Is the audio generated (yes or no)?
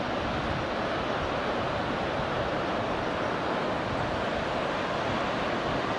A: no